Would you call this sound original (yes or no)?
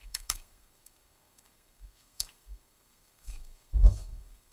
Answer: no